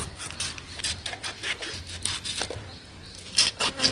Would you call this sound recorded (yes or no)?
yes